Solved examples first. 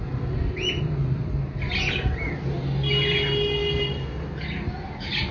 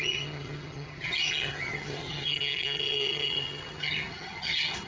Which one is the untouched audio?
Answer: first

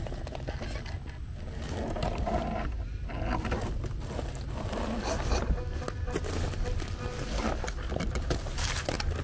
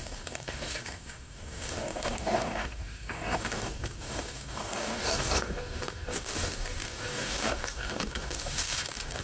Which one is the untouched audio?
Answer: first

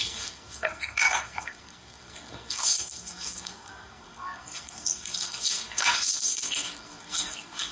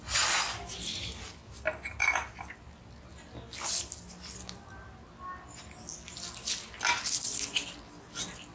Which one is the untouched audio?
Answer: second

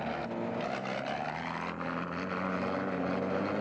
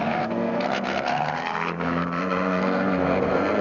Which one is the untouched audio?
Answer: first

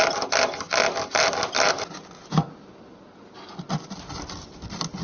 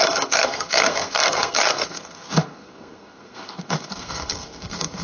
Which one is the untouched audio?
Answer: first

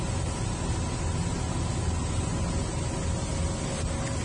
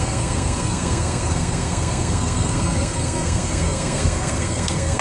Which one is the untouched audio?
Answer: first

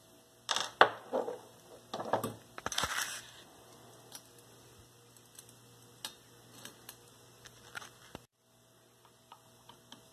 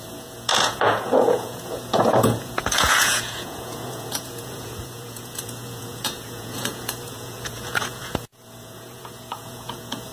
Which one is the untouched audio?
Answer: first